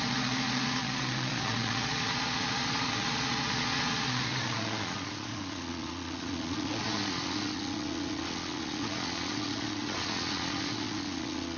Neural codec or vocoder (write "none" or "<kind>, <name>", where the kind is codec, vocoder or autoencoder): vocoder, Vocos